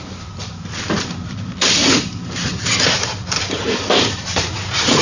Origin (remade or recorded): remade